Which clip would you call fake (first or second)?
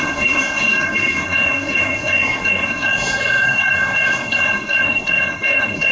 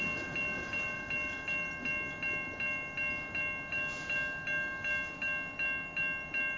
first